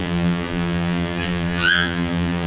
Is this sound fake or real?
fake